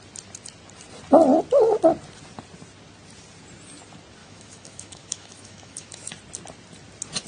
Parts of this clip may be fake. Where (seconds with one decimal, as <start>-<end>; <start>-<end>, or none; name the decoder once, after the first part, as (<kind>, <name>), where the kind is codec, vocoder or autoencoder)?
4.2-6.1 (autoencoder, DAC-VAE)